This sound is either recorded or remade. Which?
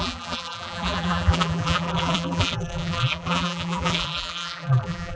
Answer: remade